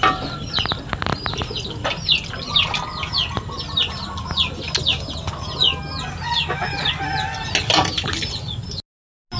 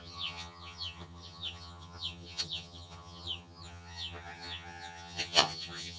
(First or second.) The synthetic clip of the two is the second